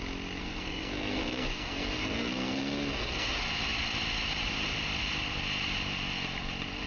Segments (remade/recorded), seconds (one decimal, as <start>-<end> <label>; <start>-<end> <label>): 0.0-0.4 recorded; 0.4-3.3 remade; 3.3-6.9 recorded